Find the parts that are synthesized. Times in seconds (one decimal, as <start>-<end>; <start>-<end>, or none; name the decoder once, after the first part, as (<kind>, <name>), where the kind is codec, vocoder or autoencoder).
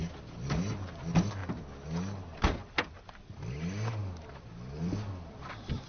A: none